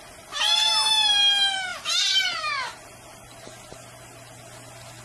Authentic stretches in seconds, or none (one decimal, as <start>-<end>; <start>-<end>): 0.0-5.0